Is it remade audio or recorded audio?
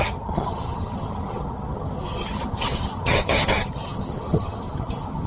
remade